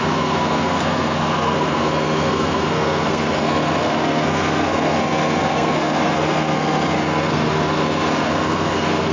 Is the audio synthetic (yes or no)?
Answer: yes